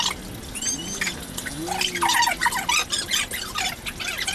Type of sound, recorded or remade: recorded